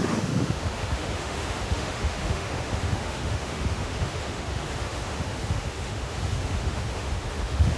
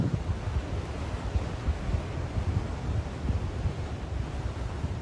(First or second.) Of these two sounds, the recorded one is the second